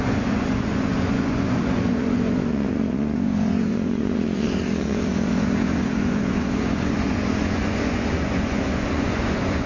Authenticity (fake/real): fake